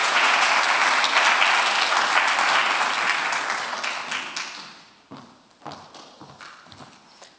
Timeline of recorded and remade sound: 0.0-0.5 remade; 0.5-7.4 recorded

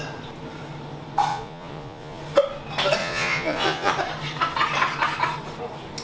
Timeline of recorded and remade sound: 0.0-1.3 recorded; 1.3-2.2 remade; 2.2-3.0 recorded; 3.0-3.9 remade; 3.9-6.0 recorded

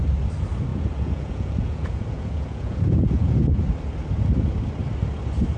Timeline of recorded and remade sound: 0.0-0.7 recorded; 0.7-3.6 remade; 3.6-5.6 recorded

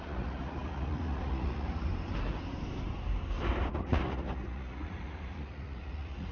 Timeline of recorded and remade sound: 0.0-1.9 remade; 1.9-3.7 recorded; 3.7-6.3 remade

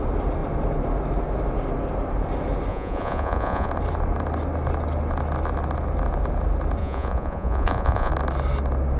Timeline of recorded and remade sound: 0.0-2.7 recorded; 2.7-3.7 remade; 3.7-6.8 recorded; 6.8-8.1 remade; 8.1-9.0 recorded

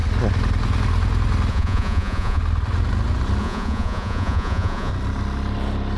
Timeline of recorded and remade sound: 0.0-1.5 recorded; 1.5-2.4 remade; 2.4-3.4 recorded; 3.4-4.9 remade; 4.9-6.0 recorded

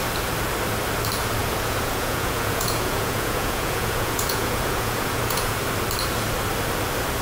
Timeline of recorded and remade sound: 0.0-1.4 recorded; 1.4-5.6 remade; 5.6-7.2 recorded